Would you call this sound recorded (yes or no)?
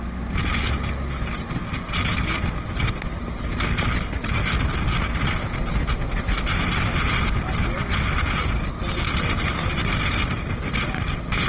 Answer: yes